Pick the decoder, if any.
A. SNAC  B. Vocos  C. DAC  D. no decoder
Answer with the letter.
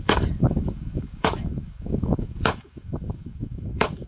C